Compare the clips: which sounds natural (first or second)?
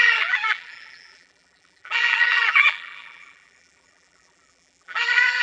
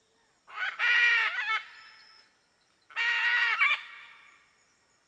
second